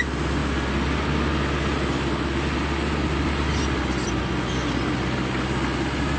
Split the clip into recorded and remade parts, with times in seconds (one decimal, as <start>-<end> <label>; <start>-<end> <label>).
0.0-6.2 recorded